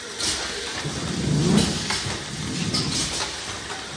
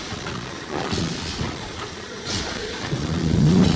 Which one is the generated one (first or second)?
second